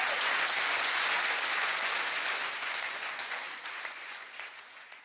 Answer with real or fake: fake